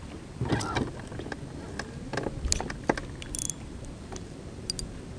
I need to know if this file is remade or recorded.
recorded